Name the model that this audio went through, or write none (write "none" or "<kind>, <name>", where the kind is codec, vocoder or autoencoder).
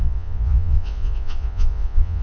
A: vocoder, Vocos